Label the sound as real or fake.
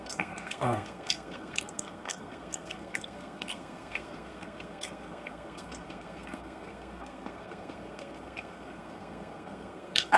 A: fake